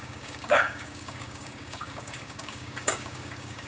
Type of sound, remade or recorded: remade